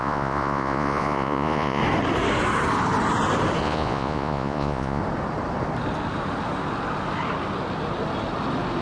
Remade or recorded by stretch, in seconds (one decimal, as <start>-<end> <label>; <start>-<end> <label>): 0.0-1.8 remade; 1.8-3.6 recorded; 3.6-5.0 remade; 5.0-8.8 recorded